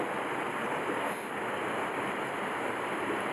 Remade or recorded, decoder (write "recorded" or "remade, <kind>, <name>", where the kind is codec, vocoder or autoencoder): recorded